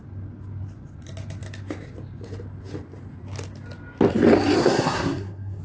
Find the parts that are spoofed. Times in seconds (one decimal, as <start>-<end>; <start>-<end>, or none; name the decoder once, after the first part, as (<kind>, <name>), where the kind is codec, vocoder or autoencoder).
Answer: 4.6-5.6 (codec, SNAC)

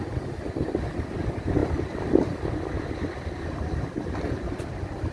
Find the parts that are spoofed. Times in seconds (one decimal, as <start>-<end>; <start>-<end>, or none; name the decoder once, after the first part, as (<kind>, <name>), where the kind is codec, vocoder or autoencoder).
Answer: none